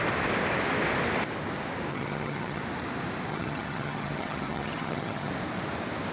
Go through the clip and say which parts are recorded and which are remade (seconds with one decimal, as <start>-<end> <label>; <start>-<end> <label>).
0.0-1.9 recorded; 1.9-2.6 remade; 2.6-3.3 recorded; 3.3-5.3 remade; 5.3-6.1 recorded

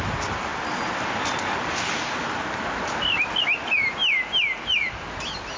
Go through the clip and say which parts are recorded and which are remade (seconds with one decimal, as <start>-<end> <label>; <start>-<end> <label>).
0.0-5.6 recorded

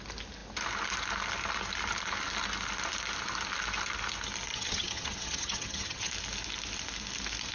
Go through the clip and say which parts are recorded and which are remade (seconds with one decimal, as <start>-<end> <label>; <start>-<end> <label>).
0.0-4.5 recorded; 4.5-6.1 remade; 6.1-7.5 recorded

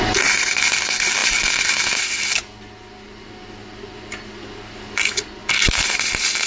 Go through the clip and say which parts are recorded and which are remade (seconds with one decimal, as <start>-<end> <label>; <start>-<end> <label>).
0.0-6.5 recorded

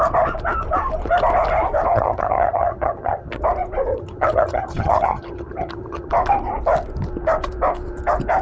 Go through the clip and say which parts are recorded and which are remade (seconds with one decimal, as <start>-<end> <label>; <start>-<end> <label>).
0.0-1.9 recorded; 1.9-3.4 remade; 3.4-3.9 recorded; 3.9-6.1 remade; 6.1-8.4 recorded

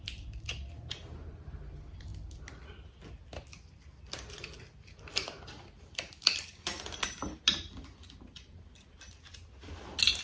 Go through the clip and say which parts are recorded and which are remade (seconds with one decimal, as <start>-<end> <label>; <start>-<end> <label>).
0.0-10.2 recorded